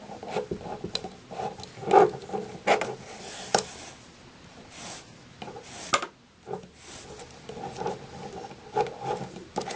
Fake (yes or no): no